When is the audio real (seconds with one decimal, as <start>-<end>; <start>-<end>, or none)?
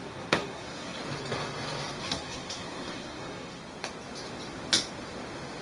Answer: 1.0-2.0; 3.6-5.6